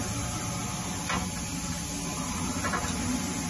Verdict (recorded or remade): recorded